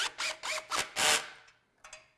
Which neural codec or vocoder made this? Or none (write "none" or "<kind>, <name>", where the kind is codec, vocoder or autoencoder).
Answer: none